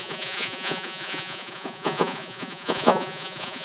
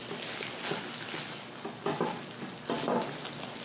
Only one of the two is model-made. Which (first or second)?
first